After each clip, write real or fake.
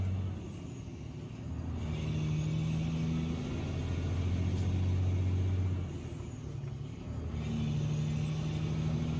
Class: real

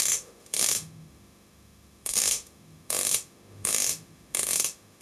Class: fake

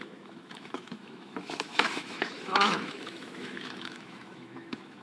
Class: fake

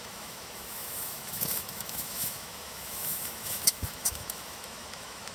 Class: fake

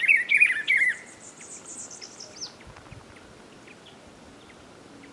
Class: real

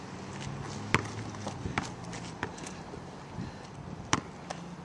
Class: real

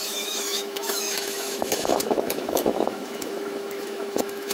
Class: fake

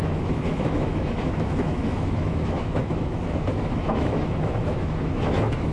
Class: fake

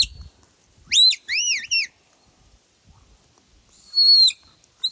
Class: real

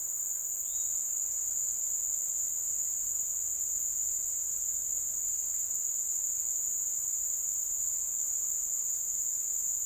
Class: real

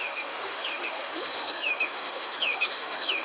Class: fake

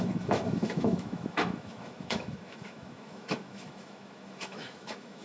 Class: fake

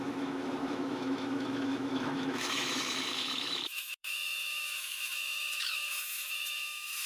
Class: fake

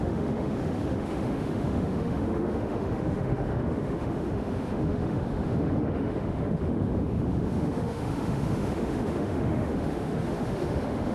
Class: fake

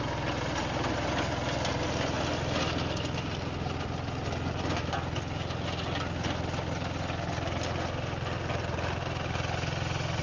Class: real